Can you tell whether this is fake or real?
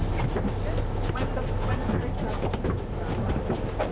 real